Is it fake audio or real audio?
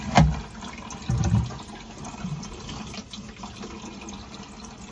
real